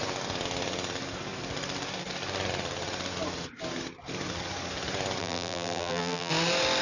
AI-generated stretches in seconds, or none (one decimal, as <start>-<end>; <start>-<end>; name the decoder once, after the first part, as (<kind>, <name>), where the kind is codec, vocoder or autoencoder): 5.2-6.3 (vocoder, BigVGAN v2)